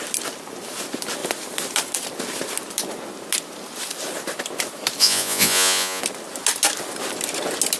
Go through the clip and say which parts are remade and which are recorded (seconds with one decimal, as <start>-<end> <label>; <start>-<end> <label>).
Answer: 0.0-5.0 recorded; 5.0-6.0 remade; 6.0-7.8 recorded